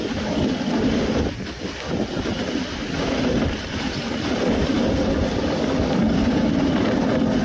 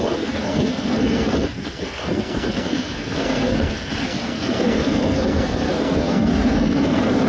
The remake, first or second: second